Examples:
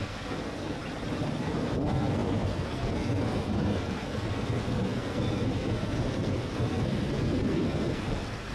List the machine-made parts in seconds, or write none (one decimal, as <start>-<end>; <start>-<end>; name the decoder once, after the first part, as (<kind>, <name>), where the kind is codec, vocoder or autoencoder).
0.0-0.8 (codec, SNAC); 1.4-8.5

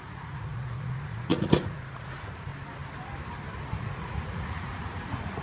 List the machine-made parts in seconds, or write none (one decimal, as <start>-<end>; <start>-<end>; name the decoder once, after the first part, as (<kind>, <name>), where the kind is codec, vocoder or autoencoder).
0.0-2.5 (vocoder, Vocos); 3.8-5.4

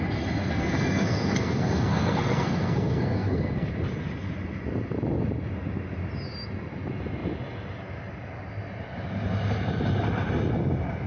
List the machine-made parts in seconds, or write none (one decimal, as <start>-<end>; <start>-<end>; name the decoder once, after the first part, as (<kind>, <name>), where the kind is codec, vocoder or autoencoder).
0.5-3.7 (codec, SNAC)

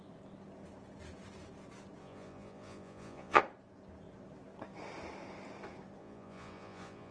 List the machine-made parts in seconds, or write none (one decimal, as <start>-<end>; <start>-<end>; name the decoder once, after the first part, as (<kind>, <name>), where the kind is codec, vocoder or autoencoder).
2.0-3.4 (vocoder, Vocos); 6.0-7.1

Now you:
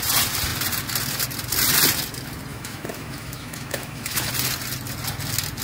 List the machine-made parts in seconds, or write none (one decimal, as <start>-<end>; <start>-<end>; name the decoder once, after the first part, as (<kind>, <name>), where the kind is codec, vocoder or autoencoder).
2.5-4.3 (autoencoder, DAC-VAE)

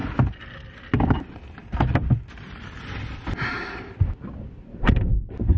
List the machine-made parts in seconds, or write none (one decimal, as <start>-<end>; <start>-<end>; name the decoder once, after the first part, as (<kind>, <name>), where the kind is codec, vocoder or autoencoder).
none

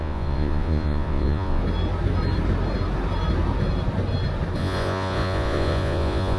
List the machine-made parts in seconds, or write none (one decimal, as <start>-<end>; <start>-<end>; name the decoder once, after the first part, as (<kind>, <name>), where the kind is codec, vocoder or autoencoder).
0.0-1.6 (vocoder, Vocos); 4.6-6.4